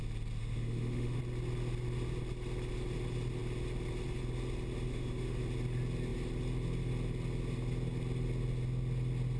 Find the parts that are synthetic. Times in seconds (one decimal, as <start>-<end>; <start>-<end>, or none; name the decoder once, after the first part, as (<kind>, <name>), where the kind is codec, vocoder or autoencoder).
0.4-1.2 (autoencoder, DAC-VAE); 4.9-5.4